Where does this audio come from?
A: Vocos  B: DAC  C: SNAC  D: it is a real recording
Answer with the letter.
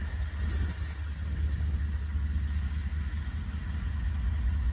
D